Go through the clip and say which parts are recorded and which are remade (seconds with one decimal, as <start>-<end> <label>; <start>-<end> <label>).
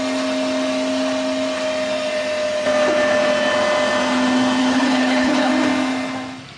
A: 0.0-4.6 recorded; 4.6-5.5 remade; 5.5-6.6 recorded